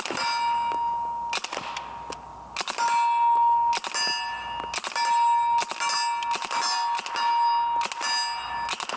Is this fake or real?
real